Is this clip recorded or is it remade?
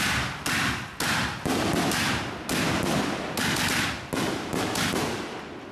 recorded